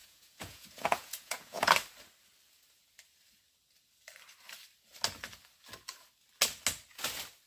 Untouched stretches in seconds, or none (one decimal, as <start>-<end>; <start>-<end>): 1.7-7.5